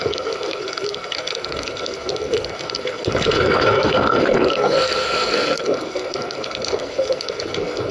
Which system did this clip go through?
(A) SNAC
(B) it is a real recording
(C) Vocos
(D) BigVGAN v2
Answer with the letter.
A